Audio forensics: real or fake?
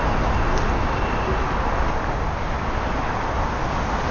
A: real